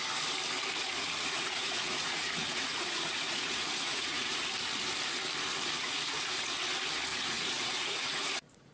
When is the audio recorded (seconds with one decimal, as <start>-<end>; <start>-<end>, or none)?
0.0-0.8; 4.4-5.8; 6.6-7.1